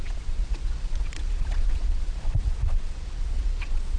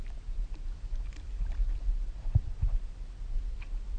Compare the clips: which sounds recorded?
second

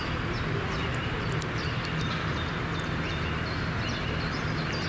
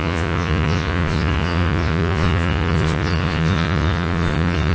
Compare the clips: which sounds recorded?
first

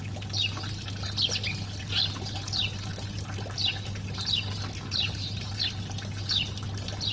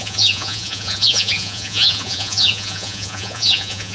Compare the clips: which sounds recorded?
first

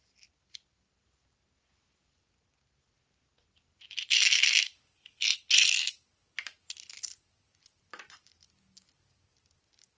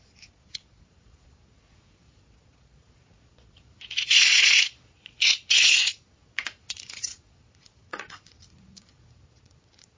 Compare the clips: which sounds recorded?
first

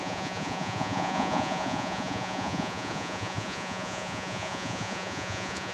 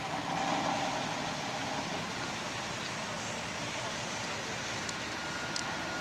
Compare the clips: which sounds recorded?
second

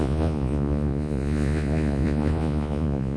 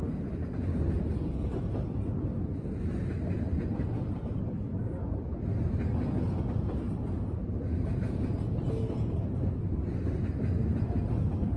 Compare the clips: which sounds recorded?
second